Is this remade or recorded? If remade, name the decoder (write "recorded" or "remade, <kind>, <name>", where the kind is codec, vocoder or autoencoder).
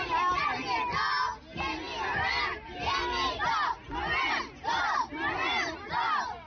recorded